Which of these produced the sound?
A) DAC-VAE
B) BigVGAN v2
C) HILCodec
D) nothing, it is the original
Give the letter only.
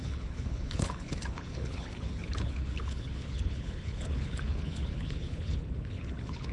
C